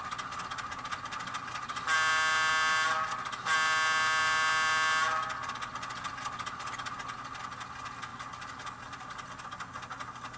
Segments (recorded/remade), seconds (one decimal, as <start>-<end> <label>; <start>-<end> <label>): 0.0-10.4 recorded